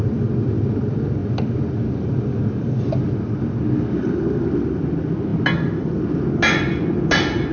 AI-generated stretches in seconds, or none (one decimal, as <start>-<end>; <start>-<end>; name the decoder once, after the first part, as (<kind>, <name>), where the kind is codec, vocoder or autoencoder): none